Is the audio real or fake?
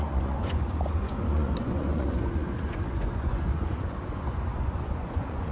fake